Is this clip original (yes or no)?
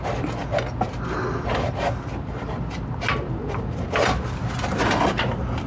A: yes